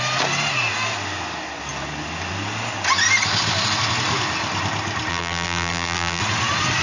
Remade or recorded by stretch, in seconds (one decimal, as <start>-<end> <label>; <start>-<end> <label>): 0.0-5.1 recorded; 5.1-6.2 remade; 6.2-6.8 recorded